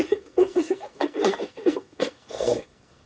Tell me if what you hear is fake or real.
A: fake